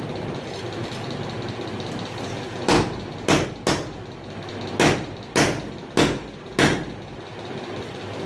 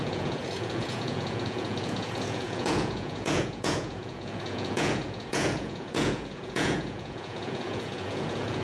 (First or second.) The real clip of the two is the first